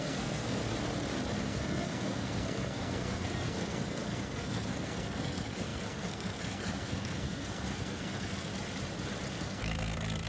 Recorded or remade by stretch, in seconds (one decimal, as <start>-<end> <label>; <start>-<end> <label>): 0.0-0.6 remade; 0.6-1.4 recorded; 1.4-8.5 remade; 8.5-9.3 recorded; 9.3-10.3 remade